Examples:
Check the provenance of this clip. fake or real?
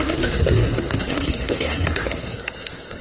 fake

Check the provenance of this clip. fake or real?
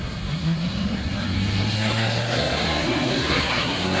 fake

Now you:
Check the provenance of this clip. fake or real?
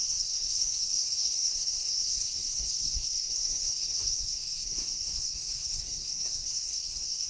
fake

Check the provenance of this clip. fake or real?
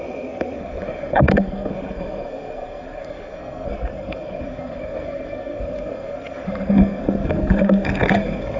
fake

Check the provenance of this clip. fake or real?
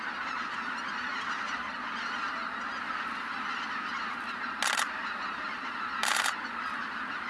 real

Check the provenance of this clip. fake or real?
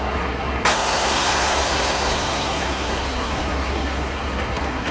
fake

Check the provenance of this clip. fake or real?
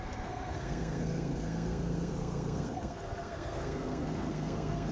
fake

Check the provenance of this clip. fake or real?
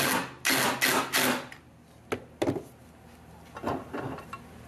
real